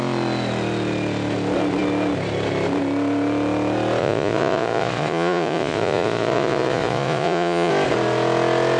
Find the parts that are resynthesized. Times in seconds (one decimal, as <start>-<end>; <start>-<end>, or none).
4.0-7.7